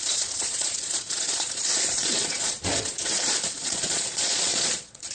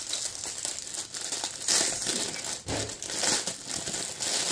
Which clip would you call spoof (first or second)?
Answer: first